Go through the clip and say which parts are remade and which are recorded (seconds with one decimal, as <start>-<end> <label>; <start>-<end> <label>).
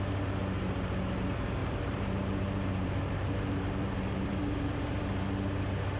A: 0.0-1.6 recorded; 1.6-5.2 remade; 5.2-6.0 recorded